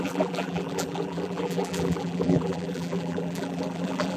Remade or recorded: remade